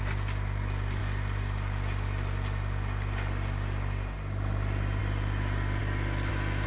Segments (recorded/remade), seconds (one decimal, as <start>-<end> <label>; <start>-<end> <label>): 0.0-6.7 recorded